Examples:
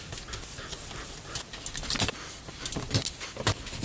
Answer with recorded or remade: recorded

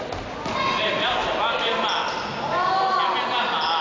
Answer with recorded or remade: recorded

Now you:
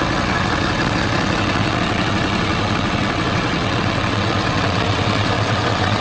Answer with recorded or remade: remade